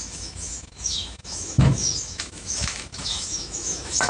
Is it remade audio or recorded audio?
remade